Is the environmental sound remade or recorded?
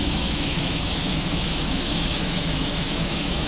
remade